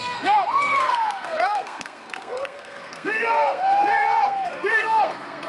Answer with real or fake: fake